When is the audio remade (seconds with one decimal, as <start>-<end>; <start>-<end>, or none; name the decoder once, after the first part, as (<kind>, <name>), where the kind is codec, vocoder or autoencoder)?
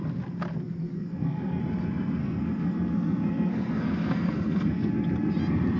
0.9-1.6 (codec, SNAC); 2.2-4.9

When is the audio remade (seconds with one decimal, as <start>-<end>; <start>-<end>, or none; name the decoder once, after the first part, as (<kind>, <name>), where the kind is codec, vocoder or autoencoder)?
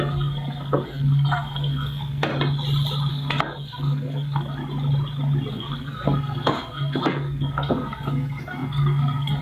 0.0-2.3 (codec, SNAC); 3.1-4.6; 5.5-9.4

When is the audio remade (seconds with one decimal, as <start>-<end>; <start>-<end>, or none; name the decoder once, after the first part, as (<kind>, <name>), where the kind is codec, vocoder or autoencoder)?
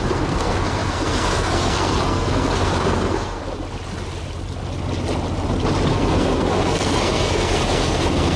0.0-3.4 (codec, SNAC); 5.9-8.4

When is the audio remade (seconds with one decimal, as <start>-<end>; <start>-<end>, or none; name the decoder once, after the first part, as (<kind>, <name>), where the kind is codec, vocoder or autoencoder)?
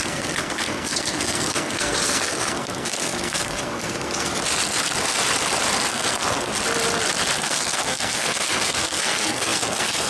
0.0-4.3 (codec, SNAC); 5.9-6.5; 7.4-10.1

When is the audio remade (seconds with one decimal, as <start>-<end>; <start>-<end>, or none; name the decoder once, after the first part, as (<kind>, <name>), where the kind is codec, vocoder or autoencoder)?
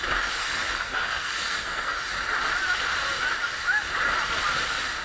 0.4-2.0 (codec, SNAC)